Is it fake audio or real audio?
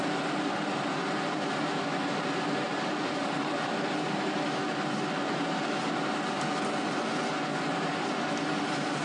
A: real